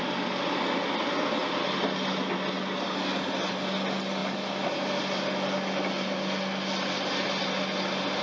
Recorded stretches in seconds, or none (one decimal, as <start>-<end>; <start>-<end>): 0.0-8.2